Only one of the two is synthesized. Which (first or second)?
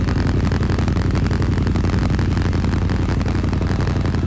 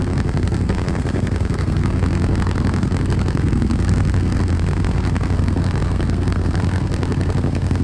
second